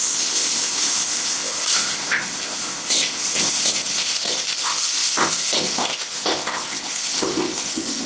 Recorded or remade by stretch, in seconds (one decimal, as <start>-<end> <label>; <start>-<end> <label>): 0.0-8.1 remade